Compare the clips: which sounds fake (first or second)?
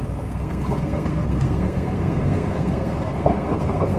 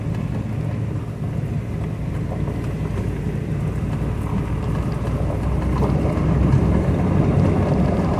first